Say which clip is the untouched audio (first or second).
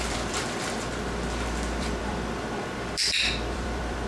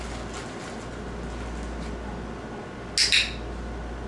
second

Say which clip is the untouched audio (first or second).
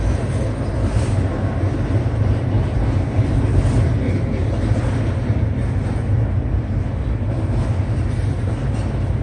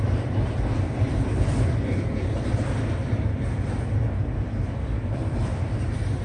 first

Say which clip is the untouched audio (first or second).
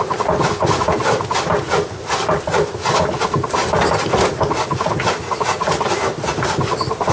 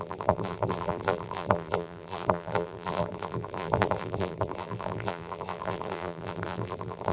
first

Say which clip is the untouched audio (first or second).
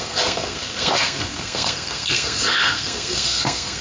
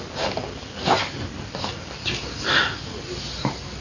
second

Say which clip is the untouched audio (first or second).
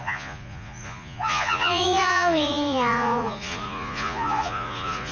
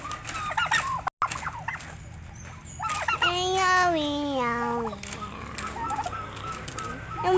second